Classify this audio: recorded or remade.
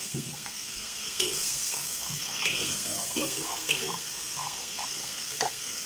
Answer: remade